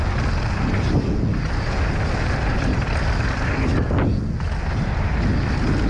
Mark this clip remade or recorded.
recorded